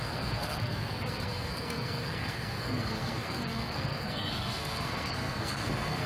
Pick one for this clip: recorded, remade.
remade